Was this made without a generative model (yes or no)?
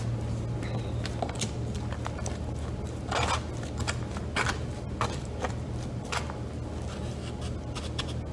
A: yes